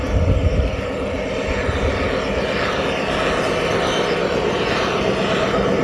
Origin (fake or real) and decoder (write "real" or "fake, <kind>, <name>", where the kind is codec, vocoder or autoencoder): real